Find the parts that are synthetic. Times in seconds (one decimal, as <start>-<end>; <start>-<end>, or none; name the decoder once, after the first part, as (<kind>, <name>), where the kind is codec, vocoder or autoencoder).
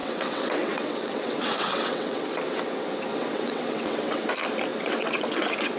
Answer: 0.0-2.2 (vocoder, WaveNeXt); 3.1-4.3; 4.7-5.8